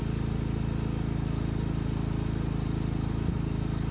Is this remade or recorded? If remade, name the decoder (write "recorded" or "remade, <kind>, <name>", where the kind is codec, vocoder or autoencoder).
recorded